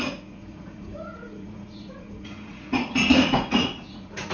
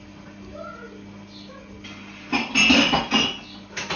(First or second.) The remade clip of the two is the first